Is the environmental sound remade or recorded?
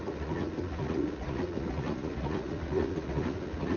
remade